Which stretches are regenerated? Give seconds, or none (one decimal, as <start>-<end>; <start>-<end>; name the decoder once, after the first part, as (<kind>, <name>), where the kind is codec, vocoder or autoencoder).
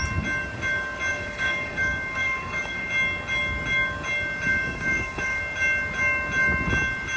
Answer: 1.1-2.9 (codec, DAC); 4.5-5.4